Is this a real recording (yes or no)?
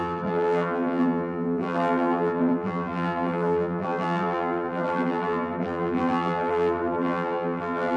no